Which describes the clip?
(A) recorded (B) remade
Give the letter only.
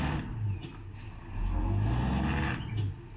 A